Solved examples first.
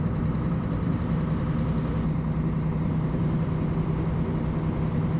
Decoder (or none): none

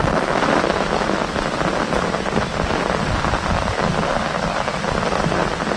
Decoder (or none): none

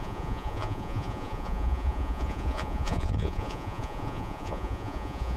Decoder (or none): vocoder, Vocos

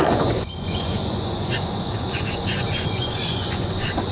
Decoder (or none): vocoder, Vocos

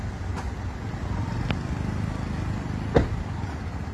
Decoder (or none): none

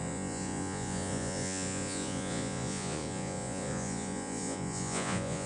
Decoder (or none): vocoder, Vocos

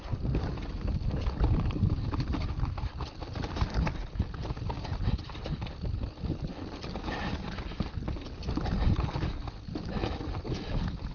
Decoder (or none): none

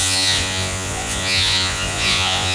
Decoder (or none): vocoder, Vocos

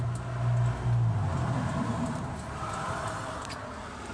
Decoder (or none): none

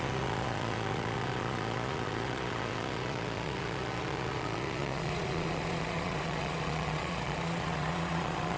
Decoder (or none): vocoder, Vocos